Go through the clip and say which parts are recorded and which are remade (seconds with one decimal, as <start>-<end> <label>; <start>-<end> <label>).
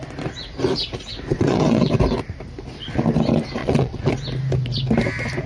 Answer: 0.0-1.3 recorded; 1.3-1.9 remade; 1.9-3.6 recorded; 3.6-4.1 remade; 4.1-5.5 recorded